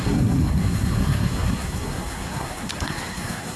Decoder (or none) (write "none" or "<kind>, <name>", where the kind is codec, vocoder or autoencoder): codec, SNAC